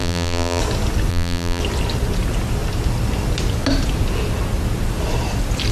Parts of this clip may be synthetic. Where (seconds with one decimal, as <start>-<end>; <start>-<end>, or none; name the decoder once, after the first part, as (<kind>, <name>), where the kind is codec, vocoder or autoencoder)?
0.0-0.6 (vocoder, BigVGAN v2); 1.1-1.6